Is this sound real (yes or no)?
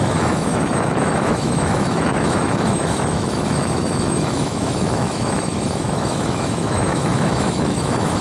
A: no